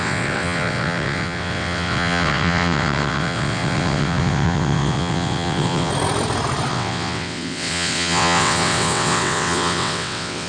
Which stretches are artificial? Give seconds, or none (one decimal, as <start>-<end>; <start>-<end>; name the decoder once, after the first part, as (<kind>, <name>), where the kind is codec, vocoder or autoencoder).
0.0-5.9 (vocoder, WaveNeXt); 6.7-10.5